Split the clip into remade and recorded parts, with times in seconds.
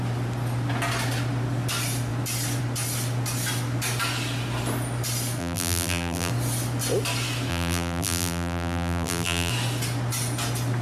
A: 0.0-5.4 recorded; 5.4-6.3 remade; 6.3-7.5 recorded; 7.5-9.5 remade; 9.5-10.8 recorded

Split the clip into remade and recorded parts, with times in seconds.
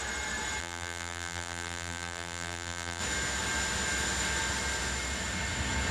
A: 0.0-0.6 recorded; 0.6-3.0 remade; 3.0-5.9 recorded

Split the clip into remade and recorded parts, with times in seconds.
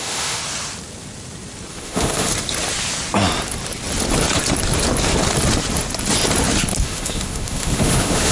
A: 0.0-0.4 remade; 0.4-1.7 recorded; 1.7-2.3 remade; 2.3-6.8 recorded; 6.8-8.3 remade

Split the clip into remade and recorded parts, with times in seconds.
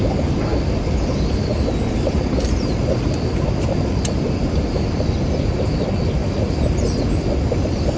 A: 0.0-8.0 recorded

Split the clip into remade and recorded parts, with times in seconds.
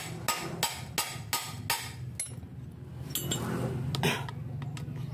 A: 0.0-5.1 recorded